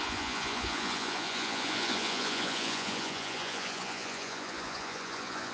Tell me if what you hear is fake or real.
fake